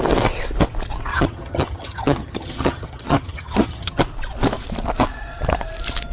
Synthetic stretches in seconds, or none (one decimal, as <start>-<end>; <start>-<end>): 1.1-4.0